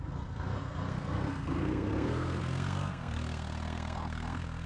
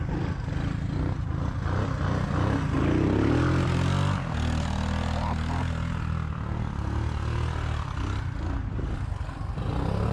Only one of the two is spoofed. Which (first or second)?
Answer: first